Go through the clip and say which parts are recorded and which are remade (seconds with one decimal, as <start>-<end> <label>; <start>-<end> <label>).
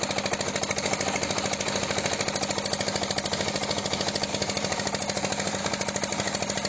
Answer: 0.0-4.3 recorded; 4.3-5.6 remade; 5.6-6.1 recorded; 6.1-6.7 remade